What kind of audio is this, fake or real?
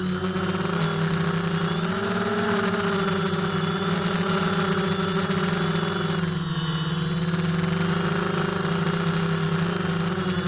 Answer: real